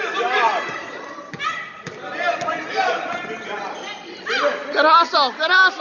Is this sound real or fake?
real